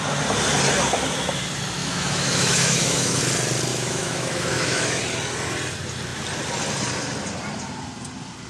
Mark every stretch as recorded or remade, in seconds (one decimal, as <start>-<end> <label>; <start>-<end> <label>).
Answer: 0.0-1.8 recorded; 1.8-3.2 remade; 3.2-3.7 recorded; 3.7-5.0 remade; 5.0-8.5 recorded